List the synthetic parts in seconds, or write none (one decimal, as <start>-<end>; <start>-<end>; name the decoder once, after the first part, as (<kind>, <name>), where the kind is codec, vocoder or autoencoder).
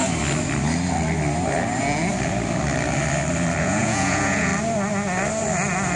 3.6-4.5 (vocoder, Vocos)